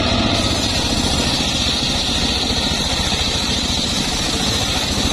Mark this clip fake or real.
real